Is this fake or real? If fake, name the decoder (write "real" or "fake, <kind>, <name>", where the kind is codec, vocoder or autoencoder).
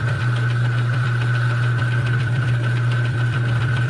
fake, vocoder, BigVGAN v2